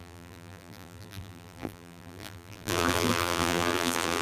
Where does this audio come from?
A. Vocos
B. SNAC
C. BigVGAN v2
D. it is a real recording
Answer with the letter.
C